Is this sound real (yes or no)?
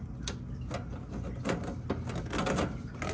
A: yes